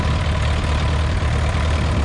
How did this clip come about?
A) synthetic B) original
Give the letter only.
B